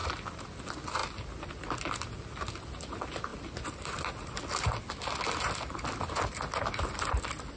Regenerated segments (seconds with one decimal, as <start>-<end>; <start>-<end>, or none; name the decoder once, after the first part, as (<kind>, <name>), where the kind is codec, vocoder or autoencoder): none

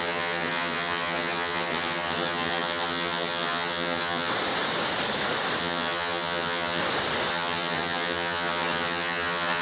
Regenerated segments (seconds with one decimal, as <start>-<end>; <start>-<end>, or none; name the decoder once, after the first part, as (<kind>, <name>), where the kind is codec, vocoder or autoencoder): 0.0-4.3 (vocoder, HiFi-GAN); 5.6-6.8; 7.3-9.6